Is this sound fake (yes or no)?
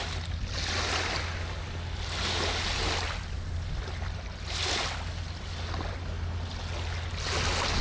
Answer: no